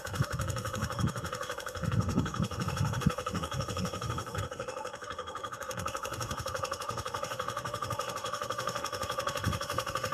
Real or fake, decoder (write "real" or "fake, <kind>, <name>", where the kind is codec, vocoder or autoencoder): fake, autoencoder, DAC-VAE